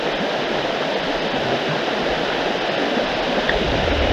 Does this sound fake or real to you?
real